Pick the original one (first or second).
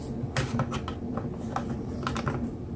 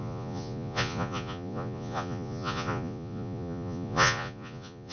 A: first